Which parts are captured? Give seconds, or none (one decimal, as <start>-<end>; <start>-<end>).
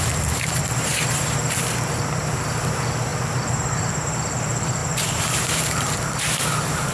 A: 3.1-3.8